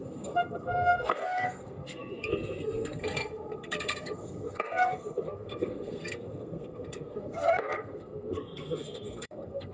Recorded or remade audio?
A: remade